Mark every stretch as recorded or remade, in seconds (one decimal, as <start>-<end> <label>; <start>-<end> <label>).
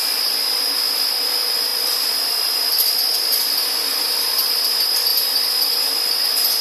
0.0-1.7 recorded; 1.7-2.7 remade; 2.7-3.9 recorded; 3.9-4.6 remade; 4.6-5.1 recorded; 5.1-5.7 remade; 5.7-6.6 recorded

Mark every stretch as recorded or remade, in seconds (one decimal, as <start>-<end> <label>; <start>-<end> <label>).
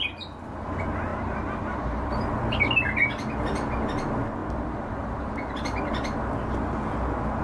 0.0-1.1 recorded; 1.1-2.1 remade; 2.1-4.4 recorded; 4.4-5.3 remade; 5.3-7.4 recorded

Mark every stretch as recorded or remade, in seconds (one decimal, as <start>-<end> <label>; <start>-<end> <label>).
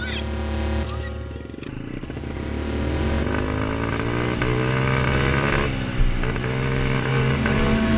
0.0-7.1 recorded; 7.1-8.0 remade